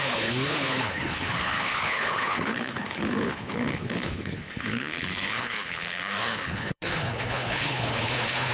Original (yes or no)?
no